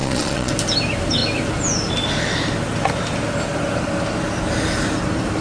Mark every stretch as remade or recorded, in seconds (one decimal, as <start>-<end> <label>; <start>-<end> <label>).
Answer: 0.0-0.5 remade; 0.5-5.4 recorded